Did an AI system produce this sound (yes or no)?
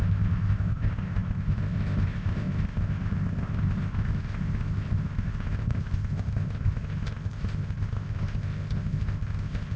yes